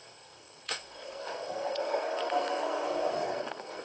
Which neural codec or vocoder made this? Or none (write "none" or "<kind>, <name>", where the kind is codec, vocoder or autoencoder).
codec, SNAC